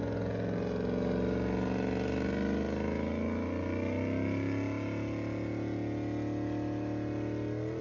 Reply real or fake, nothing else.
real